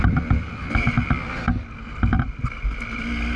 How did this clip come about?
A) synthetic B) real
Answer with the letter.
B